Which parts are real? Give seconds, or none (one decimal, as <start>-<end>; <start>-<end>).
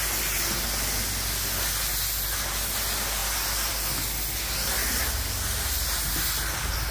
0.0-6.9